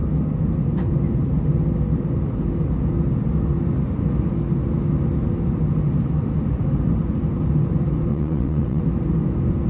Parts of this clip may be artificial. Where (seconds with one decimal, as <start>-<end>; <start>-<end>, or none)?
8.1-8.8